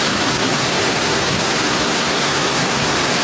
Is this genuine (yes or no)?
no